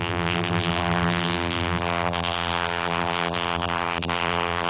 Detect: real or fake fake